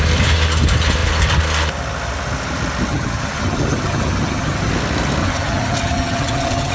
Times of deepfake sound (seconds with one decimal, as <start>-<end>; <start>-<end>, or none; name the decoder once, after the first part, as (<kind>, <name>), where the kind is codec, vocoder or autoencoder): 2.9-4.7 (vocoder, HiFi-GAN); 5.2-6.7